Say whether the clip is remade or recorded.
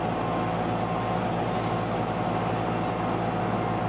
recorded